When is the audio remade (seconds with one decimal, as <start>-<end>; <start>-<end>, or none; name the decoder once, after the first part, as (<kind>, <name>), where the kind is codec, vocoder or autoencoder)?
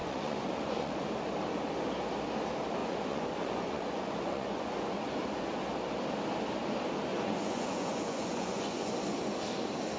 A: 0.0-1.1 (vocoder, Vocos); 2.8-4.7; 7.1-8.9